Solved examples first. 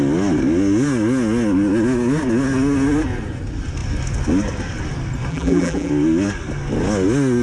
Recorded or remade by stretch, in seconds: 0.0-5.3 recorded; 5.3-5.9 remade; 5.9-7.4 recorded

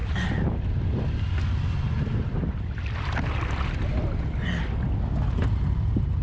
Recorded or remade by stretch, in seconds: 0.0-1.2 remade; 1.2-6.2 recorded

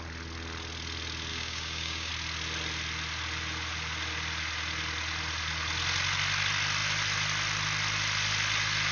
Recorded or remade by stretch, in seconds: 0.0-1.3 recorded; 1.3-2.1 remade; 2.1-8.9 recorded